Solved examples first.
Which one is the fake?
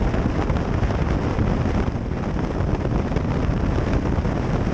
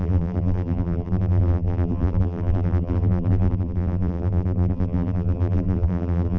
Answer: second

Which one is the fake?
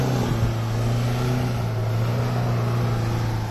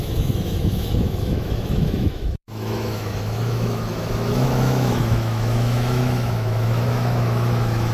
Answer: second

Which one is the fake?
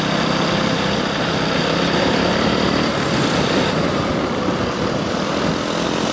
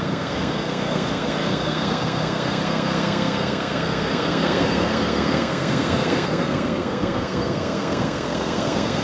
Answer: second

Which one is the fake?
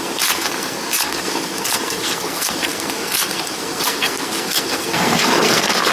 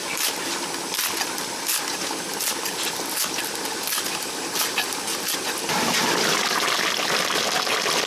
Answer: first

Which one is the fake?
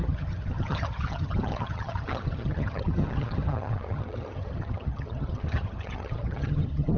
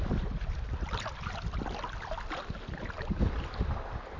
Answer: first